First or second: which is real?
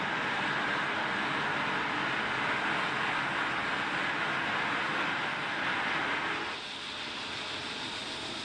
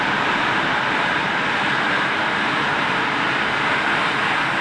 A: first